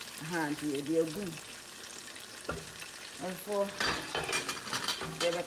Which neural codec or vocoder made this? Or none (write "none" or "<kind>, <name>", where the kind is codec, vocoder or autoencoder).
none